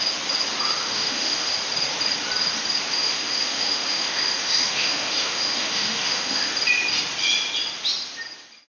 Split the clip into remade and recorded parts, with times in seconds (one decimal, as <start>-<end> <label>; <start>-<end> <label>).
0.0-0.8 recorded; 0.8-1.5 remade; 1.5-2.9 recorded; 2.9-6.5 remade; 6.5-8.7 recorded